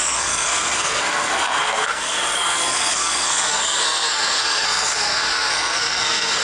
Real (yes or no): no